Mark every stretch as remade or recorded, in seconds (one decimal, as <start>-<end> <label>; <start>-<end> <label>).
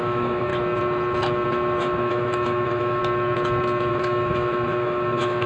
0.0-0.5 remade; 0.5-1.8 recorded; 1.8-3.0 remade; 3.0-3.9 recorded; 3.9-5.5 remade